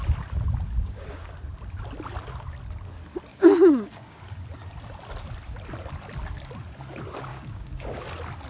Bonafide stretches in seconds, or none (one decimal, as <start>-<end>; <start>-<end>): 0.0-0.8; 1.3-3.3; 4.2-7.3; 8.0-8.5